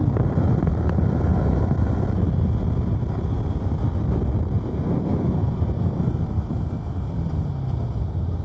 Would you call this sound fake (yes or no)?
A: no